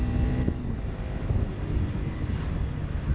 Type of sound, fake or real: real